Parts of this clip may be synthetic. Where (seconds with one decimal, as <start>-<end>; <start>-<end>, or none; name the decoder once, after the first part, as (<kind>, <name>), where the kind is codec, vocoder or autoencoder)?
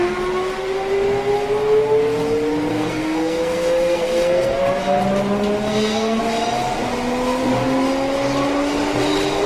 2.7-4.6 (codec, SNAC); 5.7-6.2